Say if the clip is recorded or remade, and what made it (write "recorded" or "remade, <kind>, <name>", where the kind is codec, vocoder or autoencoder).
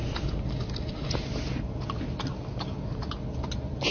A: recorded